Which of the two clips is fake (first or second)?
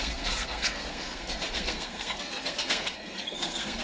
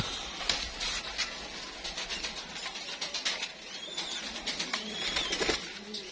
first